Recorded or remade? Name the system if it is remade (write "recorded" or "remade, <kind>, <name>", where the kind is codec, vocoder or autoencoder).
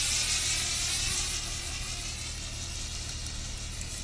recorded